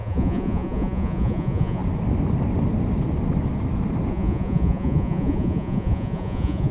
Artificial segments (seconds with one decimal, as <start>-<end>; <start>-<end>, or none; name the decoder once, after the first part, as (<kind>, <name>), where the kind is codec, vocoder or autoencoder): 0.0-1.8 (vocoder, Vocos); 4.1-6.7